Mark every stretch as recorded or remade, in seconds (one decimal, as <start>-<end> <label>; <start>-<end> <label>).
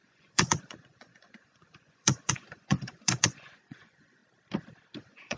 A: 0.0-4.2 remade; 4.2-5.0 recorded; 5.0-5.4 remade